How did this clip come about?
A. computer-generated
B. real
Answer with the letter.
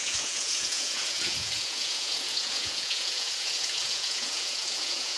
A